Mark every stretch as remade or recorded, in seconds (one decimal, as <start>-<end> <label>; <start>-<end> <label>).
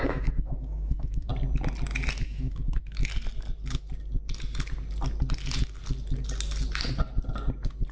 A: 0.0-1.3 remade; 1.3-2.2 recorded; 2.2-3.0 remade; 3.0-7.9 recorded